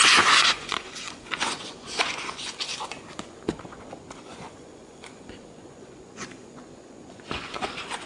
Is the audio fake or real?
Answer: fake